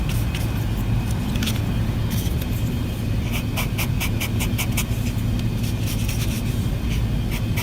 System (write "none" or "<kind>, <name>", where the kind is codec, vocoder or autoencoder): none